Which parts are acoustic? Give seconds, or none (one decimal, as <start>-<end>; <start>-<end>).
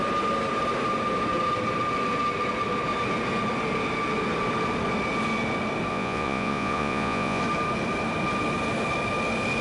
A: 0.0-5.9; 7.4-9.6